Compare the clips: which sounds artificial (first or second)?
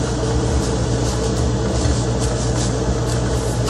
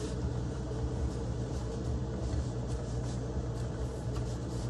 second